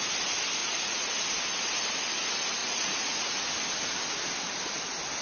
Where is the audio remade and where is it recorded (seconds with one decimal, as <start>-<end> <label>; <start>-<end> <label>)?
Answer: 0.0-0.6 recorded; 0.6-1.1 remade; 1.1-2.6 recorded; 2.6-3.5 remade; 3.5-5.2 recorded